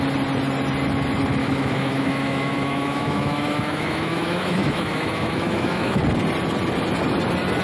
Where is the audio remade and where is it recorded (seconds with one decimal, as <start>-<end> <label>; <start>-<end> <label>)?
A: 0.0-1.4 recorded; 1.4-6.0 remade; 6.0-7.6 recorded